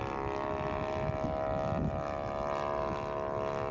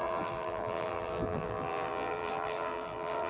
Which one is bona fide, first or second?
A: first